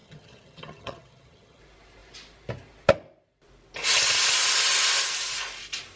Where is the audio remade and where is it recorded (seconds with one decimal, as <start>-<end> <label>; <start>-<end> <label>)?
0.0-1.6 remade; 1.6-6.0 recorded